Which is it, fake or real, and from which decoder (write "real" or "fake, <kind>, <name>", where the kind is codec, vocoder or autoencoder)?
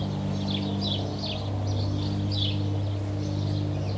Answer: real